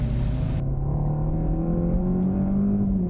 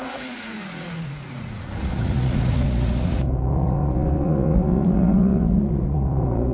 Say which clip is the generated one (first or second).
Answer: second